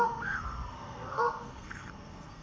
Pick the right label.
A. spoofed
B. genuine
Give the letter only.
A